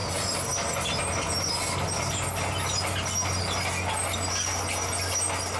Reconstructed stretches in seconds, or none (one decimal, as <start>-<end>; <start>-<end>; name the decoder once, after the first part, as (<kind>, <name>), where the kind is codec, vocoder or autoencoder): none